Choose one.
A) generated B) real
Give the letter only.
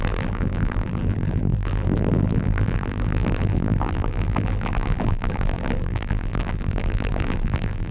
A